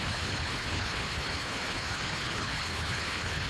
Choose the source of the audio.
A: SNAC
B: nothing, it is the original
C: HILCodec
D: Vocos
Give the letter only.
C